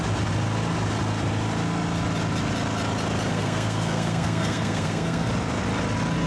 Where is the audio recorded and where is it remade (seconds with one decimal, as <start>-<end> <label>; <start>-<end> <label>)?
0.0-3.3 recorded; 3.3-5.3 remade; 5.3-6.3 recorded